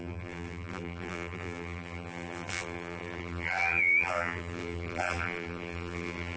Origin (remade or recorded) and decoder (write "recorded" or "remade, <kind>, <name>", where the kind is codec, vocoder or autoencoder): remade, vocoder, BigVGAN v2